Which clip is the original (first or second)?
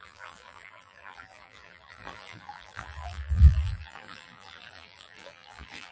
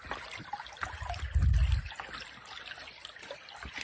second